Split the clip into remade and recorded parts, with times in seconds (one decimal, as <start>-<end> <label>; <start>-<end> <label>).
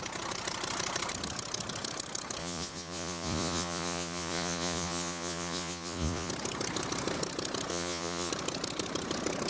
0.0-2.4 recorded; 2.4-6.3 remade; 6.3-7.7 recorded; 7.7-8.3 remade; 8.3-9.5 recorded